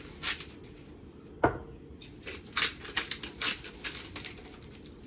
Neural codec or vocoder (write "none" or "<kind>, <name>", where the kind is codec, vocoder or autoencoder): none